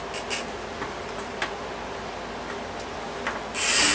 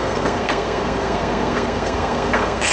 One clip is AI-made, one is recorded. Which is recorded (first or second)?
first